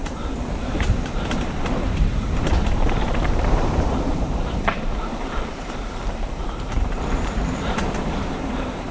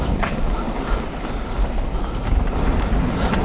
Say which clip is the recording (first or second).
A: second